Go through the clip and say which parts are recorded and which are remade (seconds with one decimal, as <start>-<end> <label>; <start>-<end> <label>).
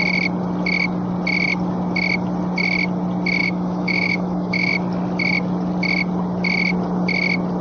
0.0-3.4 recorded; 3.4-4.7 remade; 4.7-7.6 recorded